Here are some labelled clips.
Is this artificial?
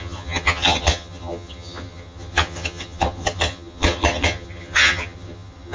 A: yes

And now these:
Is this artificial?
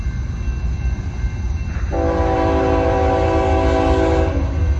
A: no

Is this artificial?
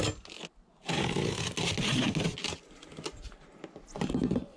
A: no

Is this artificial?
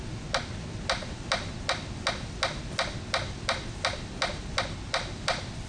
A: no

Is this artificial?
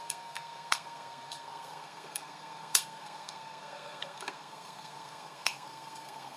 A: yes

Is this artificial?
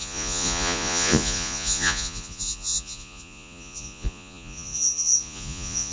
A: yes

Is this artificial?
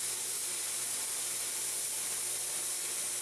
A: no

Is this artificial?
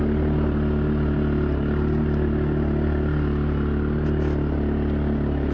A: no